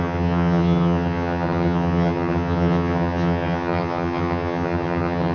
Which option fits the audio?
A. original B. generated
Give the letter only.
B